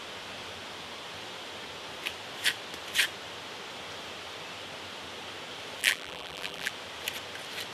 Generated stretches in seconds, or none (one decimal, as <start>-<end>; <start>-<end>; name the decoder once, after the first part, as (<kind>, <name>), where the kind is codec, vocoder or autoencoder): 5.8-6.7 (vocoder, BigVGAN v2)